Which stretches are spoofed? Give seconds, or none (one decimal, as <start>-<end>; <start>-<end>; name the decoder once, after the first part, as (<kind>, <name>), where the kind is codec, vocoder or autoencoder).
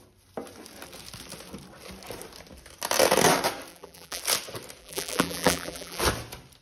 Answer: 3.7-4.2 (vocoder, BigVGAN v2); 4.8-6.0